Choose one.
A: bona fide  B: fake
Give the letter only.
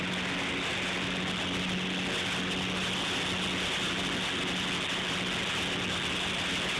A